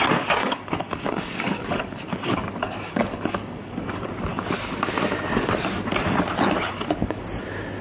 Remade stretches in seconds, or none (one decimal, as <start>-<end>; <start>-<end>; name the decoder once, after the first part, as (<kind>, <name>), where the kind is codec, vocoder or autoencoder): 0.4-4.1 (codec, DAC); 6.7-7.2